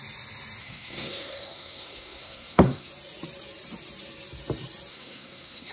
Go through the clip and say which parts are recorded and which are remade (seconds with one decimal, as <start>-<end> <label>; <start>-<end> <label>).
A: 0.0-0.6 recorded; 0.6-2.9 remade; 2.9-4.9 recorded; 4.9-5.7 remade